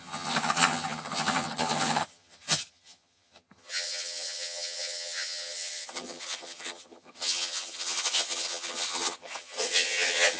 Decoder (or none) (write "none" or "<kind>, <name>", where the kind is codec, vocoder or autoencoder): vocoder, HiFi-GAN